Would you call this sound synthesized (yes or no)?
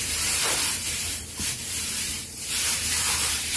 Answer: yes